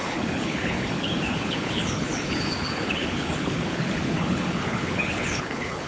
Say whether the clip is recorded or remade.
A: remade